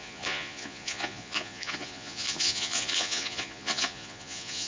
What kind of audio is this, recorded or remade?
remade